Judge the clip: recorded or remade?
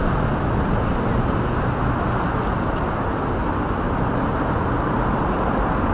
recorded